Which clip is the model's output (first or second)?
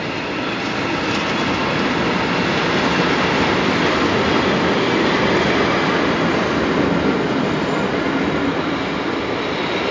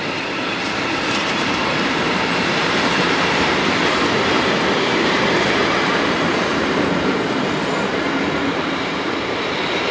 second